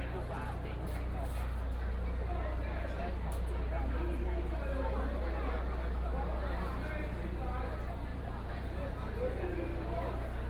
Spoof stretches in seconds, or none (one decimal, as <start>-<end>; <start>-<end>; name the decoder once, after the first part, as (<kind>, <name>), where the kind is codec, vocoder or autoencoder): 8.1-8.9 (vocoder, Vocos)